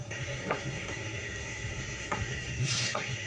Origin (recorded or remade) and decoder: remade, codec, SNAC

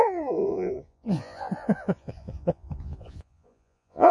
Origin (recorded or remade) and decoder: remade, vocoder, Vocos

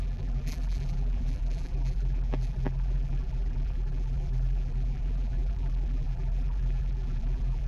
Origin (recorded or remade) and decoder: remade, vocoder, BigVGAN v2